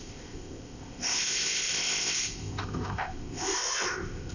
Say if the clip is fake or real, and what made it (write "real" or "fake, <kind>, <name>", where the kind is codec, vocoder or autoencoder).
fake, codec, ZipCodec